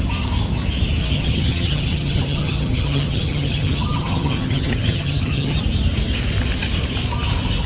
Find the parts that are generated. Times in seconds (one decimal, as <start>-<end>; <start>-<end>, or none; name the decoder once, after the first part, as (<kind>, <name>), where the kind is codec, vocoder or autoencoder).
1.0-5.6 (vocoder, HiFi-GAN)